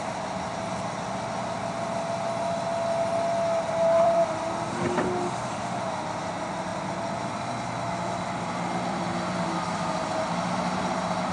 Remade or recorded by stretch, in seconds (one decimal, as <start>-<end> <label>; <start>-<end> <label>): 0.0-2.7 remade; 2.7-3.7 recorded; 3.7-11.3 remade